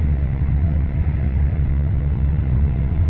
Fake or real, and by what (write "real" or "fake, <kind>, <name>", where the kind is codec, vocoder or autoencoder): fake, vocoder, WaveNeXt